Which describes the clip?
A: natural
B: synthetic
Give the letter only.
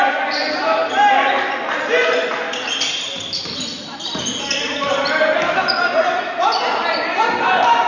A